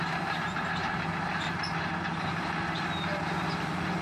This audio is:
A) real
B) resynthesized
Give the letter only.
A